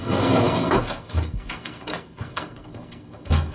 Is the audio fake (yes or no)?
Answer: yes